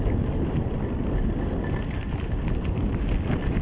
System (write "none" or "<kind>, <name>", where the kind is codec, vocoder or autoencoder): none